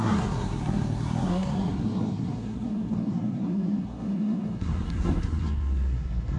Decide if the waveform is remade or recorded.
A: remade